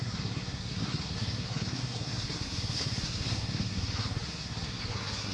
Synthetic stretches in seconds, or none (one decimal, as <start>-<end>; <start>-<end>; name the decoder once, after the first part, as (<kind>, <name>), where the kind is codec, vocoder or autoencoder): 0.0-5.3 (codec, SNAC)

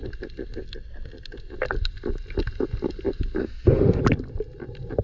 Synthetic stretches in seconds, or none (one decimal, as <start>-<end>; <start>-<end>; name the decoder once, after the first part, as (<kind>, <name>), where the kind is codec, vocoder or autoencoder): 3.4-4.0 (autoencoder, DAC-VAE)

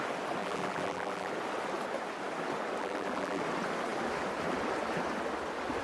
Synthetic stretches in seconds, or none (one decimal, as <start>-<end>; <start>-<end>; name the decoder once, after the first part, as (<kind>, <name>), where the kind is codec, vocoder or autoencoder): 0.4-1.3 (vocoder, BigVGAN v2); 2.8-3.4

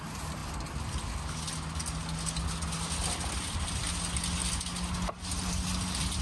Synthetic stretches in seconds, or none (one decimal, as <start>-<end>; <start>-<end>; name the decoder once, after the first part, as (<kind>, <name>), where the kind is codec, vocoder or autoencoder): none